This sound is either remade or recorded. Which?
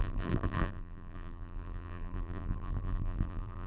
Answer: remade